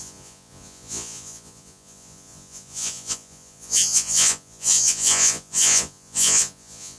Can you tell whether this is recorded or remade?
remade